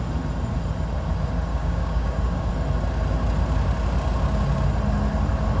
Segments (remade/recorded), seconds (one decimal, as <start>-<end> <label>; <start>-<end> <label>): 0.0-1.5 recorded; 1.5-2.5 remade; 2.5-5.6 recorded